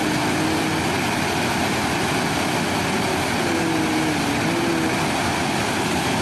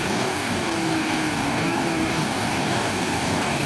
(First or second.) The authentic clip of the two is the first